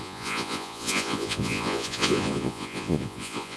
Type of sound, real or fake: fake